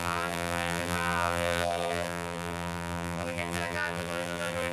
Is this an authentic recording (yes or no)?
no